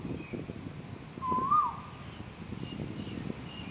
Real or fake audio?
real